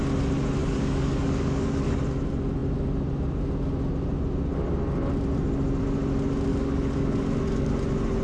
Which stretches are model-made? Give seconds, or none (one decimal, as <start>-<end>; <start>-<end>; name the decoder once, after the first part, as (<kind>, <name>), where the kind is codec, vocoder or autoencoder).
0.6-2.0 (codec, DAC); 6.5-7.7